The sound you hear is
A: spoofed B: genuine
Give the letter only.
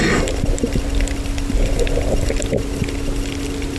B